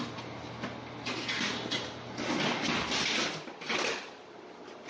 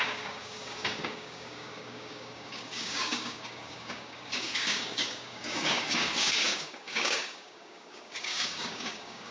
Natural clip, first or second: first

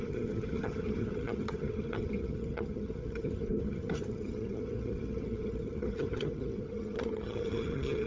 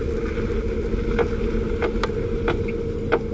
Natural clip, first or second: second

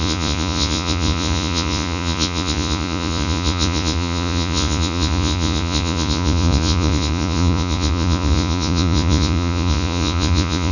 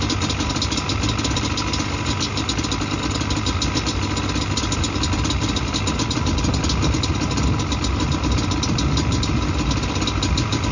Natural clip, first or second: second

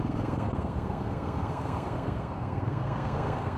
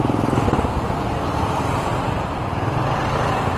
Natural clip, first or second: second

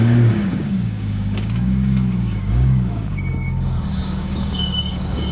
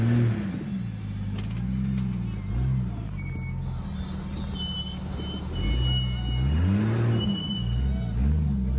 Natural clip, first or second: second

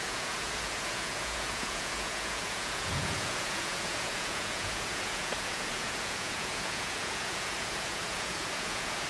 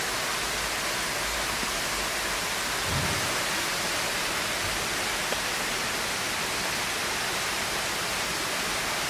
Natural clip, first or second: second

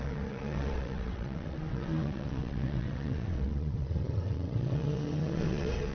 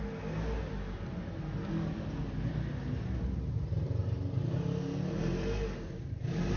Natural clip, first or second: second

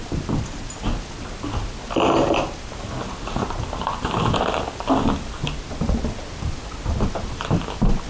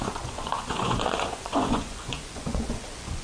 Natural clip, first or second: first